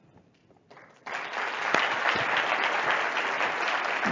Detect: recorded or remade recorded